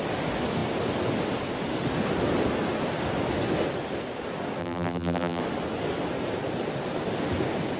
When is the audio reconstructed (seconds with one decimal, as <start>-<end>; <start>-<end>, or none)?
4.6-5.4